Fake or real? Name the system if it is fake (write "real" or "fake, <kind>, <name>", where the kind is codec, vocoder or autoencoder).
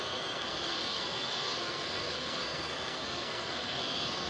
fake, codec, SNAC